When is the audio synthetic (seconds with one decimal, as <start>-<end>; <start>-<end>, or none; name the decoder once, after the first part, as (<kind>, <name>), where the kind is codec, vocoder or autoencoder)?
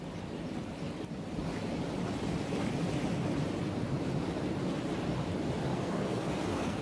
5.7-6.8 (codec, SNAC)